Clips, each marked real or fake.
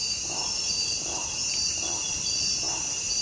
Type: fake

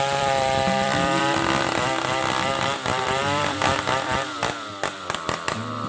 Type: fake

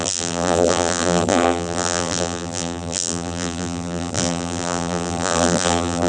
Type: fake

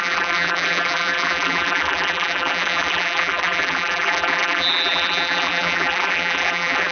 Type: fake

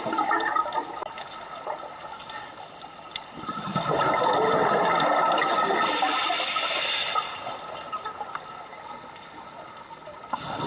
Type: real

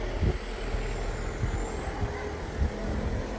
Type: real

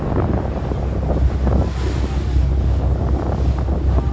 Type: real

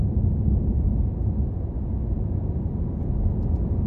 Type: real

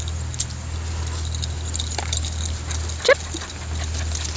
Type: real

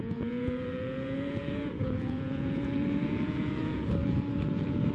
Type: fake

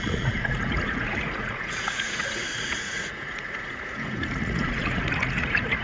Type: fake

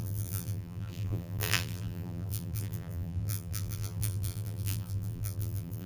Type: fake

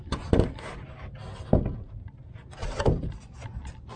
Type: real